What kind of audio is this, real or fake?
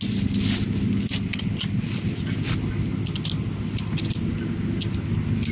real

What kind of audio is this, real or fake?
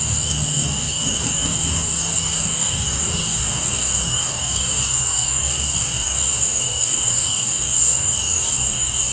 fake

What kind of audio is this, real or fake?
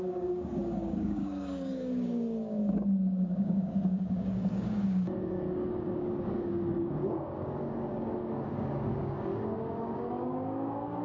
fake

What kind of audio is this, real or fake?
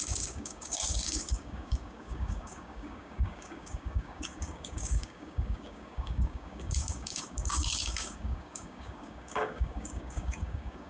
fake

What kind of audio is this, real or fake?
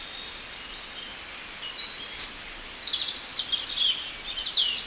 real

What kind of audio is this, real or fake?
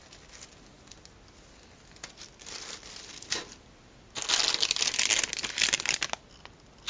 real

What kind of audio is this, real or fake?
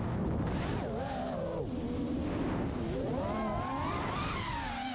real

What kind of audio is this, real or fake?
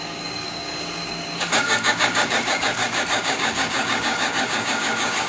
fake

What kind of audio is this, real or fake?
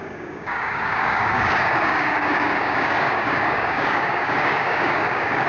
fake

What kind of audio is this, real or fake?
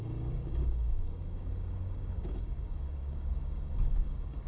fake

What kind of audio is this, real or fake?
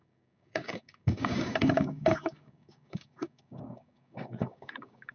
fake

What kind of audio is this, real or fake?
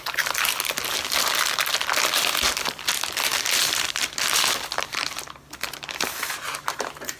real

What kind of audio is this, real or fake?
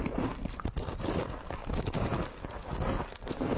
real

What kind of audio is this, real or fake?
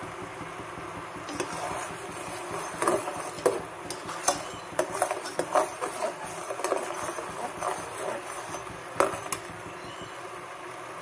real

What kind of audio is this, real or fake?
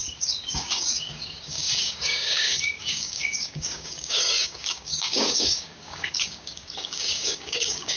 fake